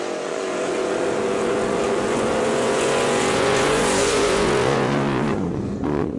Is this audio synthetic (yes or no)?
yes